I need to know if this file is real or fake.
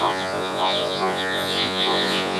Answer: fake